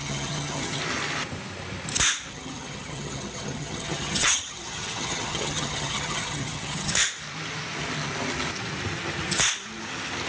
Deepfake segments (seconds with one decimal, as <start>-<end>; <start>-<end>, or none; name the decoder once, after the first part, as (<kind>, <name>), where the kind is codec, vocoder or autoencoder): 0.0-0.8 (vocoder, HiFi-GAN); 2.3-6.9